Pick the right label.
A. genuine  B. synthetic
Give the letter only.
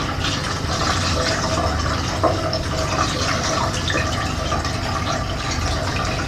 A